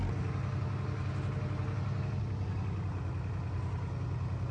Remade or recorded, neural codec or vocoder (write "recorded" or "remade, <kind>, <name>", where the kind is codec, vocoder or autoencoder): recorded